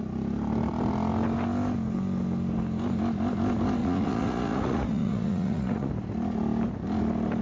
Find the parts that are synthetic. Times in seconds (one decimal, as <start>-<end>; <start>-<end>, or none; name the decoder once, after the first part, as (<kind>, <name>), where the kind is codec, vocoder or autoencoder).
3.8-5.9 (vocoder, Vocos)